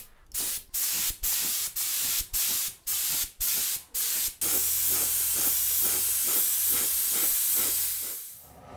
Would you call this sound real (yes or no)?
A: yes